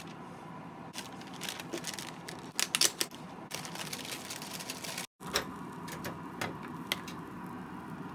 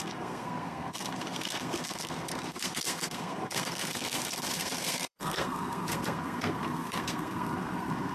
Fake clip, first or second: second